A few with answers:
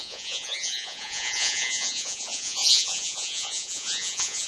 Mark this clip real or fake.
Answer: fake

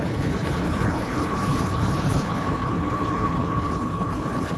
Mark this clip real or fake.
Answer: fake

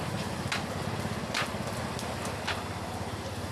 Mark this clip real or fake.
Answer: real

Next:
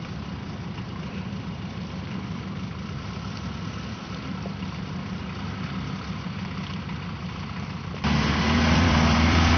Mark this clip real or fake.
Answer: fake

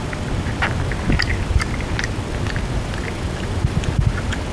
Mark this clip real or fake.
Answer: real